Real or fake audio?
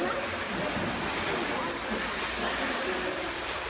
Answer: real